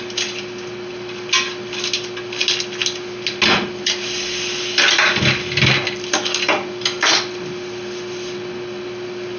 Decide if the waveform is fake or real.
real